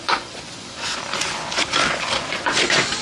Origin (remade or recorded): remade